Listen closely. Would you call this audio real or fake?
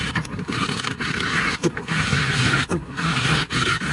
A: fake